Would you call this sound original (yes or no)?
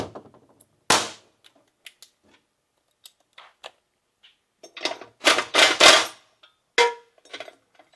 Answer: yes